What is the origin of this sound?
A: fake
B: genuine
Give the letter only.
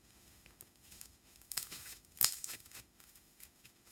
A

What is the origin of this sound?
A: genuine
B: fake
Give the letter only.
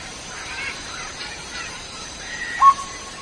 B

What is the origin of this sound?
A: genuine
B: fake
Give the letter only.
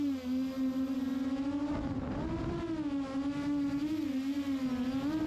A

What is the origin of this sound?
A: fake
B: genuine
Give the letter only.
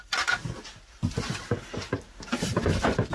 B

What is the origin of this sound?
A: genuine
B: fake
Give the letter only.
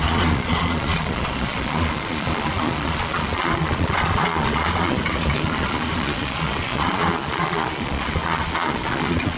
B